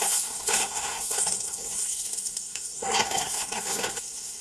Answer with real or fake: fake